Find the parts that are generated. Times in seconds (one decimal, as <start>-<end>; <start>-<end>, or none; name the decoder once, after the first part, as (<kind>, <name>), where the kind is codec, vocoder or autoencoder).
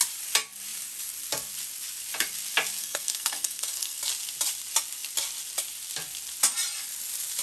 2.8-4.0 (codec, SNAC)